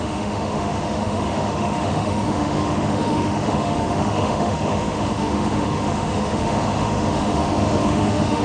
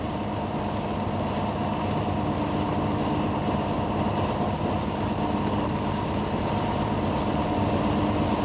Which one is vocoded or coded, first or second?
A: first